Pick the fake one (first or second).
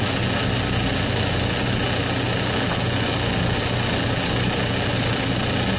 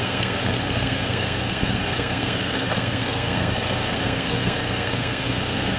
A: second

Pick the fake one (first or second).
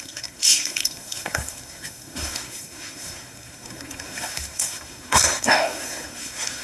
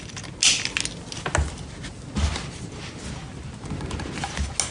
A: first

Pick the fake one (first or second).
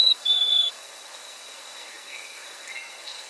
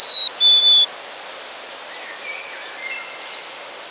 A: first